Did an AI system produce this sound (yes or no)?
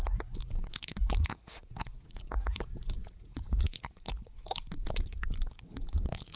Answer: yes